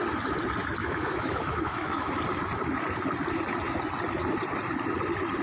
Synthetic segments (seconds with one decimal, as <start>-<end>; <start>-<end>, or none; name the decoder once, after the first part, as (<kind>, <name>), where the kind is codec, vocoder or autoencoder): 0.8-2.1 (autoencoder, DAC-VAE)